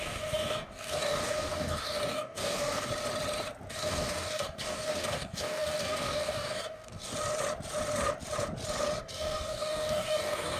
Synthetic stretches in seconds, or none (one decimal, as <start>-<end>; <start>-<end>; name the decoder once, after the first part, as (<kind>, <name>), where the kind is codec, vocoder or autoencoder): 0.0-2.9 (codec, DAC); 3.7-7.1; 9.0-10.6